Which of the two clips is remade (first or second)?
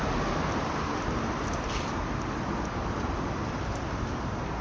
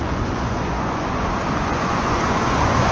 second